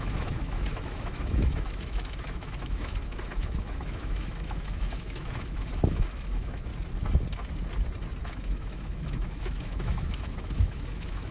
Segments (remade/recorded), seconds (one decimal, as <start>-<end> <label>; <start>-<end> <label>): 0.0-6.7 remade; 6.7-8.2 recorded; 8.2-11.3 remade